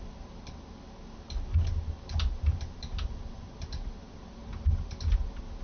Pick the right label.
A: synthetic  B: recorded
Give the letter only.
B